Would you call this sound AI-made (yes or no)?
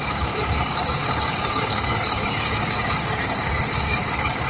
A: yes